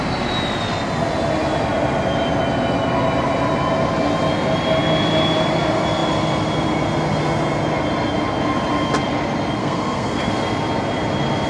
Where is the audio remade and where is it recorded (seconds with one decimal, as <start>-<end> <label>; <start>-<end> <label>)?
0.0-9.6 recorded; 9.6-10.3 remade; 10.3-11.5 recorded